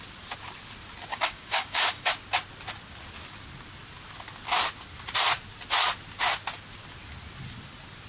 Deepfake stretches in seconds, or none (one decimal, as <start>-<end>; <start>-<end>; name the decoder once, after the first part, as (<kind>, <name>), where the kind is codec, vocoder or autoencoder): 1.1-2.0 (codec, DAC)